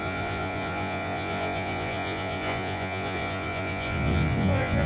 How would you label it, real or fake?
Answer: fake